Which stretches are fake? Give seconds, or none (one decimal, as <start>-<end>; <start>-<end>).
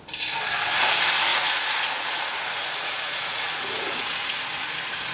1.3-4.4